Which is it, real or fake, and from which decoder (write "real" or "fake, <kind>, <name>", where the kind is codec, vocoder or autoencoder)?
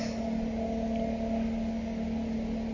real